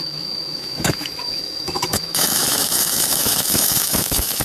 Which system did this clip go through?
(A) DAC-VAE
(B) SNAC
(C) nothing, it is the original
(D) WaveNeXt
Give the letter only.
A